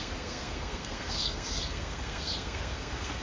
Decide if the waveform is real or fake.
fake